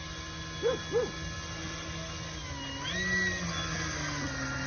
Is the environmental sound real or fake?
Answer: real